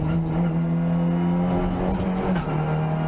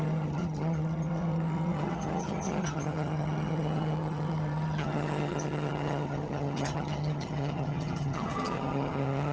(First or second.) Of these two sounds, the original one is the first